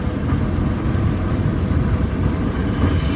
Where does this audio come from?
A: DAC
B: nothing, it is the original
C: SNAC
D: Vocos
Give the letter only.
B